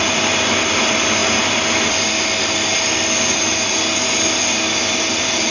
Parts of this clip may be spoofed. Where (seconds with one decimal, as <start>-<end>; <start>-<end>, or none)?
none

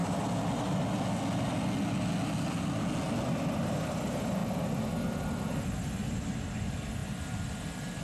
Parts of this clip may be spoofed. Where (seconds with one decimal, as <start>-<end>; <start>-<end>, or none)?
none